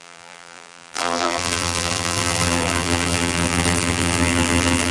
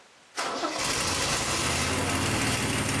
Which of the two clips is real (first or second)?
second